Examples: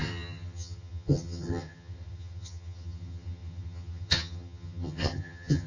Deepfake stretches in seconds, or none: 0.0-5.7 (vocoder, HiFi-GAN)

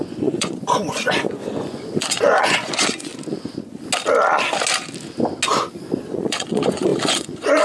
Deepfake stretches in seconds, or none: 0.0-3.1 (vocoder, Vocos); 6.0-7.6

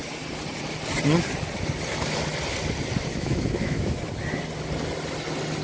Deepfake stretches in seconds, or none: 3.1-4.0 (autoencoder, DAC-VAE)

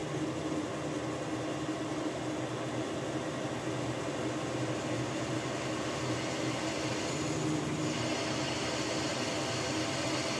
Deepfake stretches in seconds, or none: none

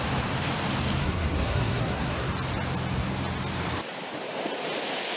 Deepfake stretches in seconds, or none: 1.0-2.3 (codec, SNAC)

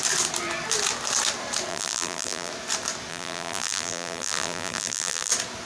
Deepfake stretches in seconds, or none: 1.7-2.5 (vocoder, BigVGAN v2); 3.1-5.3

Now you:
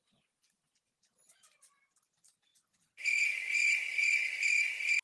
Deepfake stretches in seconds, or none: none

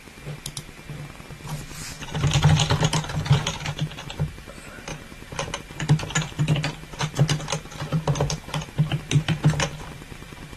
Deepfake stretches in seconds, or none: 3.4-4.4 (vocoder, BigVGAN v2); 4.9-5.5; 7.9-10.6